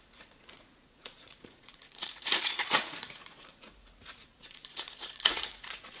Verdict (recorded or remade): remade